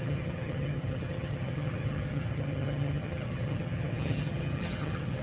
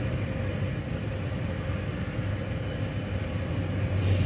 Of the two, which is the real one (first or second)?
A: second